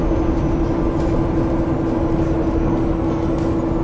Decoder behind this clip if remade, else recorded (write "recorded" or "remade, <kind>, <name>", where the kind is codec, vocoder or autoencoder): recorded